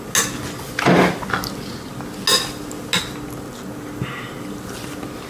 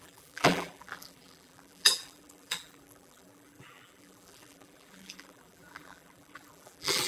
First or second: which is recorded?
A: first